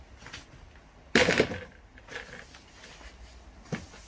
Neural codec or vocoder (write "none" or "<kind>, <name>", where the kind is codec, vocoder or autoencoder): none